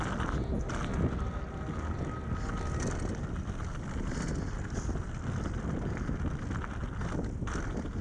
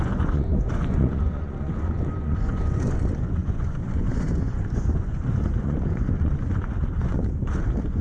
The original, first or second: first